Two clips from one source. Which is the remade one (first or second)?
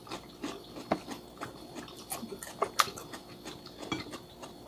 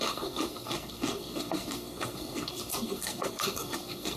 second